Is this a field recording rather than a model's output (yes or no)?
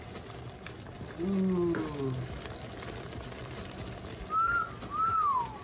yes